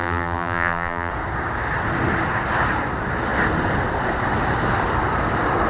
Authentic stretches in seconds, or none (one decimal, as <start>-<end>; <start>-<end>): 1.1-5.7